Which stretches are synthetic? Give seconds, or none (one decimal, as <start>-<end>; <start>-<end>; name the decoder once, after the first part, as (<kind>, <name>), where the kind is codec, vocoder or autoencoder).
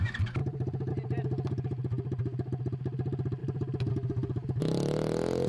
0.4-0.9 (vocoder, BigVGAN v2)